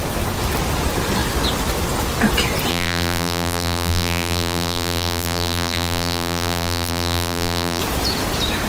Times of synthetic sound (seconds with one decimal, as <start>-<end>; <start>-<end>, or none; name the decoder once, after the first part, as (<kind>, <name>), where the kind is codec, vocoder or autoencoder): 2.7-7.8 (vocoder, BigVGAN v2)